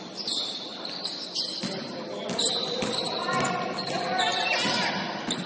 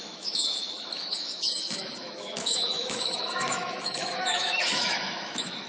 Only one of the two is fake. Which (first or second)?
second